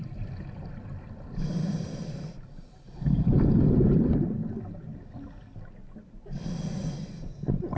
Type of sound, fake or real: real